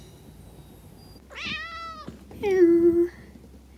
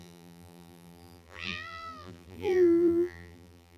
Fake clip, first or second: second